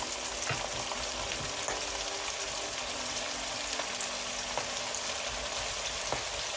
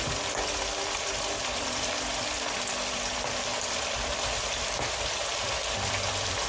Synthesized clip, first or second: second